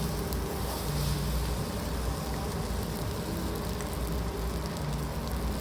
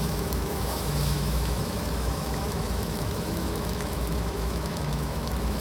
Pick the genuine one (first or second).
first